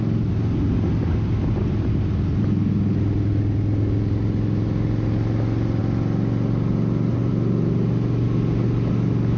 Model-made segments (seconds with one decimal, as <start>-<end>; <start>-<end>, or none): none